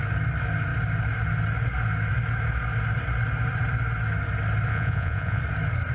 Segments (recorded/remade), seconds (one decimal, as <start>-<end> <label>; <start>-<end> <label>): 0.0-4.7 recorded; 4.7-5.4 remade; 5.4-5.9 recorded